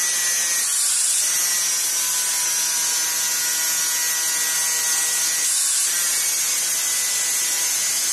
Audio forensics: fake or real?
real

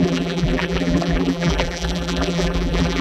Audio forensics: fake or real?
fake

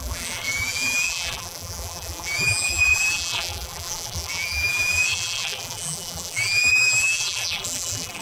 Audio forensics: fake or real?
fake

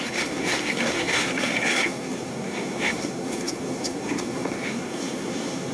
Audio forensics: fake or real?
fake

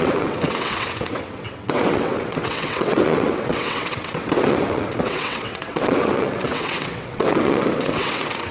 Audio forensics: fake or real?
fake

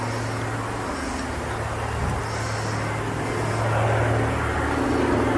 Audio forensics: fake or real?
real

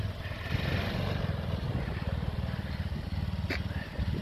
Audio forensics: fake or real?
real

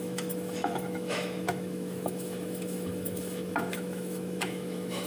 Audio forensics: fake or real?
fake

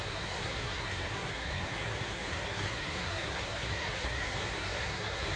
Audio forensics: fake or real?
fake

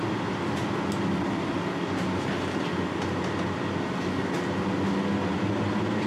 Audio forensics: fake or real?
real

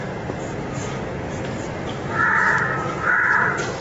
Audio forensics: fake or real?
real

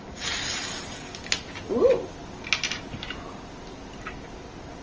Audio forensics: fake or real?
real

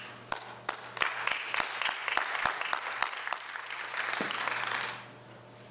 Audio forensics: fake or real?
real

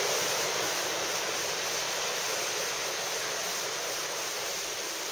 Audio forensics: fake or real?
real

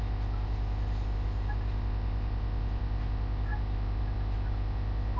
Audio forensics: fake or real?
real